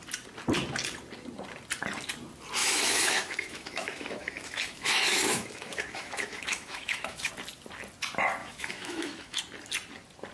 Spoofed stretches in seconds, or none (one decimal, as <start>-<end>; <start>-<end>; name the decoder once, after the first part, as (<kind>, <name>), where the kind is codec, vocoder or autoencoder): 2.6-7.3 (autoencoder, DAC-VAE); 8.4-9.4